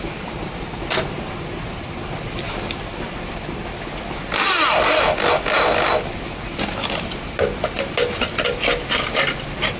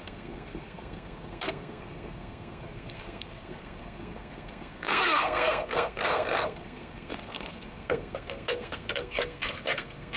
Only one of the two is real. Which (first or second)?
first